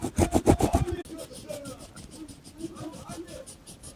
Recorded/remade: recorded